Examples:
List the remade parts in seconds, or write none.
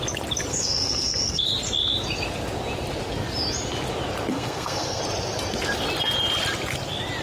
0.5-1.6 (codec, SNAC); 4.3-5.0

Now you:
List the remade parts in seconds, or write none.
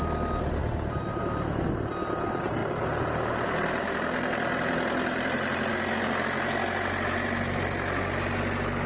none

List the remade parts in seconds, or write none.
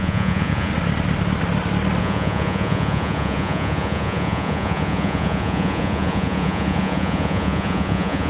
0.0-0.7 (vocoder, Vocos); 2.0-8.3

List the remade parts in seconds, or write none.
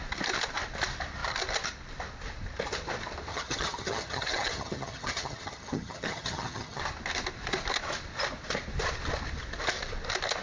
3.3-6.8 (vocoder, HiFi-GAN)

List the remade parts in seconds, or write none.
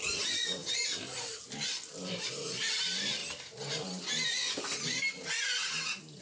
none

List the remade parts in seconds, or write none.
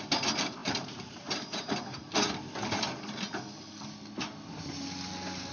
0.6-2.3 (vocoder, BigVGAN v2)